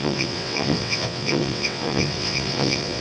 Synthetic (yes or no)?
yes